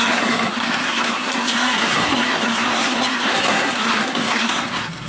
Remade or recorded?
remade